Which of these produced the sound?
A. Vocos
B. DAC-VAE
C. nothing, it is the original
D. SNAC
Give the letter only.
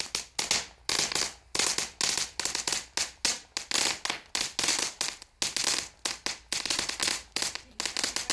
C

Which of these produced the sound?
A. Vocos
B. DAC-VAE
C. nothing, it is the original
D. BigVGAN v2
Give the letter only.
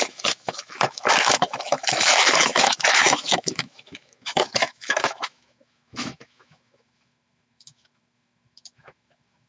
B